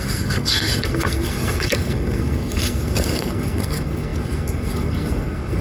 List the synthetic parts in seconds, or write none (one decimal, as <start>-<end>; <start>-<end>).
0.0-5.6